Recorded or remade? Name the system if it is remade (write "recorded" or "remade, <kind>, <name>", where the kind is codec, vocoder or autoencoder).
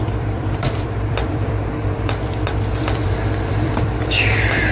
remade, vocoder, BigVGAN v2